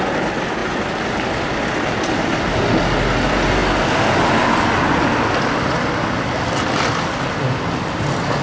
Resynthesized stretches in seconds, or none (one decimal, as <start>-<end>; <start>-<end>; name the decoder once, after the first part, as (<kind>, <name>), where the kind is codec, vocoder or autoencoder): none